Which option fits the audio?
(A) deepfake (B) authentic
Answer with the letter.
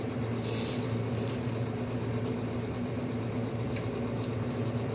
B